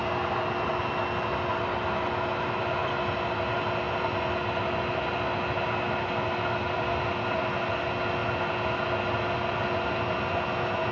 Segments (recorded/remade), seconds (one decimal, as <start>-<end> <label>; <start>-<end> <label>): 0.0-10.9 recorded